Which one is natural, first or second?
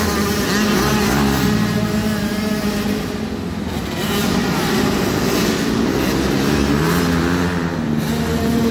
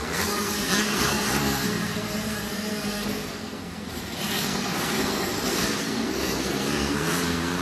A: first